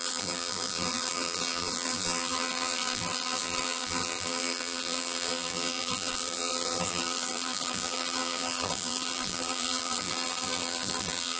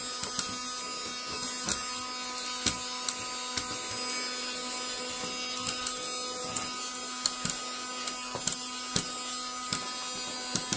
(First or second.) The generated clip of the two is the first